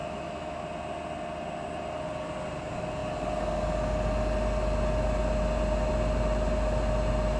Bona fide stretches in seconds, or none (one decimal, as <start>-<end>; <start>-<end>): 0.6-7.4